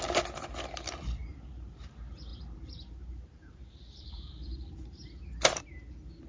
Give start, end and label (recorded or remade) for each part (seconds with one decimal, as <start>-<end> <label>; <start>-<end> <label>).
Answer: 0.0-1.2 recorded; 1.2-1.9 remade; 1.9-2.3 recorded; 2.3-5.6 remade; 5.6-6.3 recorded